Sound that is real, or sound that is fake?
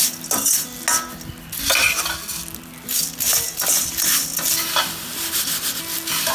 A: real